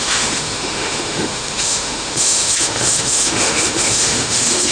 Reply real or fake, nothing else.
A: fake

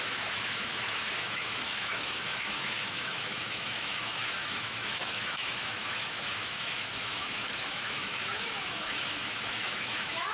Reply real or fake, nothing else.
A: fake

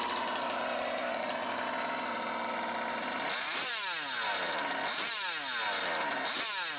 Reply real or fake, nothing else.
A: real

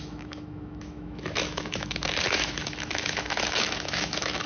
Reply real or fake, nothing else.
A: fake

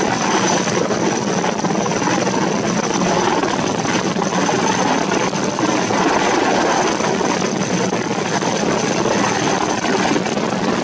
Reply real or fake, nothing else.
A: real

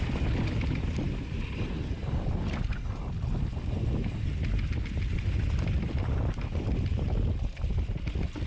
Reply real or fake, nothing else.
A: real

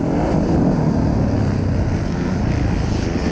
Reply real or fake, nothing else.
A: real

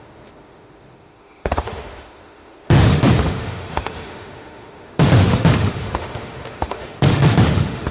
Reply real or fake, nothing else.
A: fake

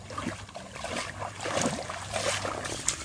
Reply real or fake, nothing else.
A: real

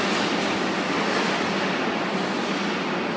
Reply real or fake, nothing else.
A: real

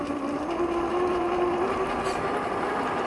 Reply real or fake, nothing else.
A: real